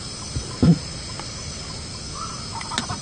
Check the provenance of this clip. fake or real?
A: real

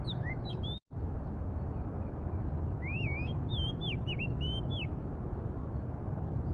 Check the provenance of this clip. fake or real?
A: fake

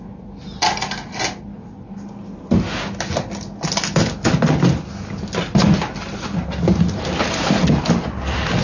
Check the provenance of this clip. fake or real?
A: real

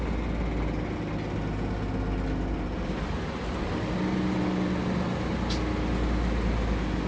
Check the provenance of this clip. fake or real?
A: real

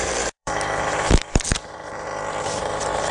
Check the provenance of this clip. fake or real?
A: fake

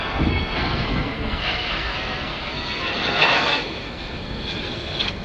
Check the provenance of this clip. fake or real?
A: fake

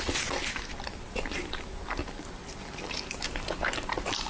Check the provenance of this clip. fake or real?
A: real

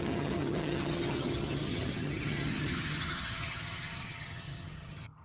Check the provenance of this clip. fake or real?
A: fake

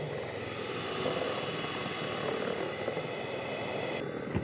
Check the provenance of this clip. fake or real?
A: fake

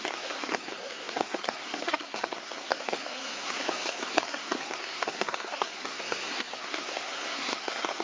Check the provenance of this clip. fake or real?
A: fake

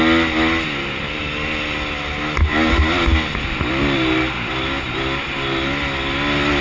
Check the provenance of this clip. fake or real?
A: real